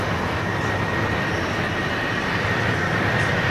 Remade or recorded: recorded